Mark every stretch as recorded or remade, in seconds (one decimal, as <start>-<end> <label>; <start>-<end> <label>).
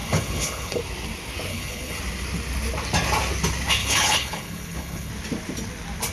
0.0-0.8 remade; 0.8-1.5 recorded; 1.5-2.0 remade; 2.0-3.8 recorded; 3.8-5.1 remade; 5.1-6.1 recorded